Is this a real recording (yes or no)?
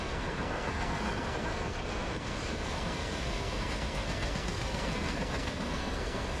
no